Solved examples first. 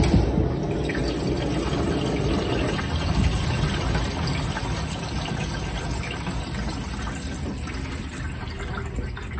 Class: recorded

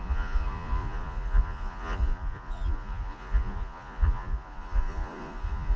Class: remade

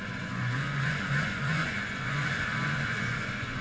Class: remade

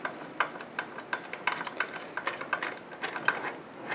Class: recorded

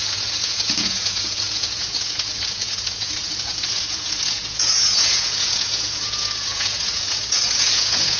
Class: remade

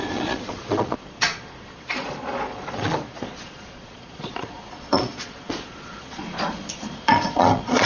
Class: remade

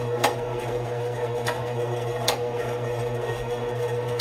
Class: remade